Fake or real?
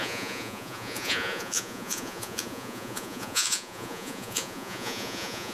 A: fake